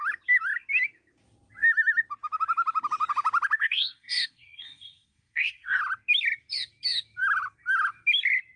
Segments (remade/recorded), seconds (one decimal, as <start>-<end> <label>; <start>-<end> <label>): 0.0-3.6 recorded; 3.6-5.8 remade; 5.8-8.6 recorded